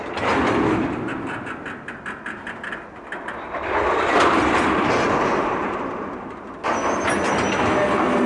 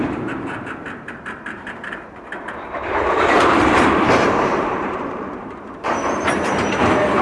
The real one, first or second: first